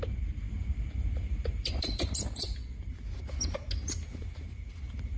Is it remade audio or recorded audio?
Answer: remade